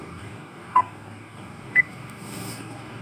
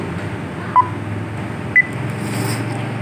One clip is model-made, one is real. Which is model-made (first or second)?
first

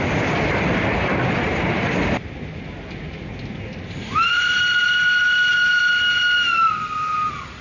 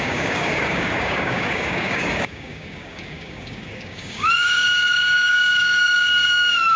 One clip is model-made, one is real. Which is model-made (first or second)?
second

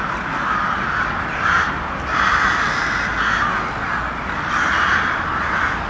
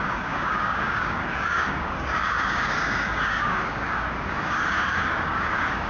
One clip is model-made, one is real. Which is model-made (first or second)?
second